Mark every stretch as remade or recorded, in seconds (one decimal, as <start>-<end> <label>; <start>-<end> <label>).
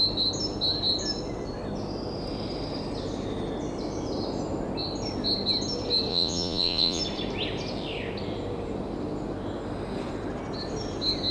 0.0-6.1 recorded; 6.1-7.0 remade; 7.0-11.3 recorded